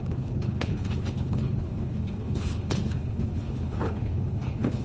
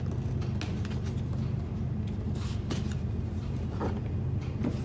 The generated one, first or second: first